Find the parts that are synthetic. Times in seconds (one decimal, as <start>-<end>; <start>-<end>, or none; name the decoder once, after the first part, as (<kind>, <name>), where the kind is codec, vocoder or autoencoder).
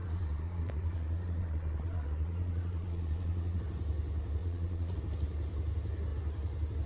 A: 0.0-3.6 (vocoder, Vocos); 4.4-5.0